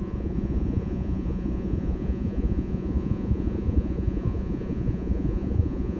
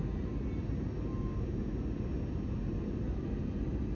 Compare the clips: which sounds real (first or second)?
second